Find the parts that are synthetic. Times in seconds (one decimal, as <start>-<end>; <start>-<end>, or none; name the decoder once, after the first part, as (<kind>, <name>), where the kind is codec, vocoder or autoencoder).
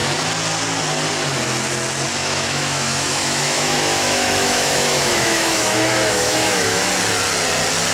2.2-6.9 (autoencoder, DAC-VAE)